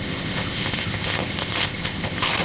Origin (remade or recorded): remade